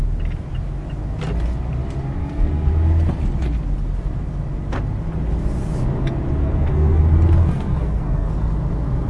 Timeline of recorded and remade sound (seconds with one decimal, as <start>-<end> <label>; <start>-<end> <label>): 0.0-2.2 recorded; 2.2-2.7 remade; 2.7-6.4 recorded; 6.4-7.0 remade; 7.0-7.4 recorded; 7.4-8.5 remade; 8.5-9.1 recorded